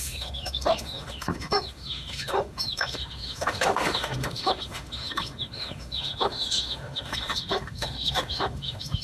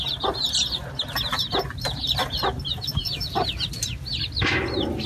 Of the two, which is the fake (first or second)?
first